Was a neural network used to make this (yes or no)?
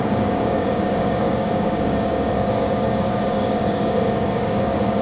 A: yes